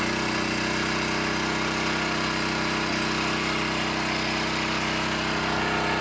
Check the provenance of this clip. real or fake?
real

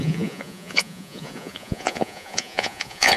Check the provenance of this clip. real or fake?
fake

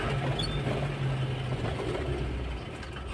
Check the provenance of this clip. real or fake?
real